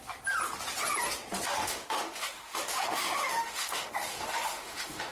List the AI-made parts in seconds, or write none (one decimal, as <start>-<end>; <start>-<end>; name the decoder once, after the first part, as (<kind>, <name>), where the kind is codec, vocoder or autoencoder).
1.6-5.1 (autoencoder, DAC-VAE)